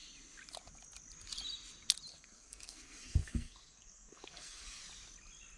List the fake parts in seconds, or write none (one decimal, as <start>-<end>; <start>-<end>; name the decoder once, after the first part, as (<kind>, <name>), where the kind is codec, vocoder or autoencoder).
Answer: 2.1-4.8 (codec, SNAC)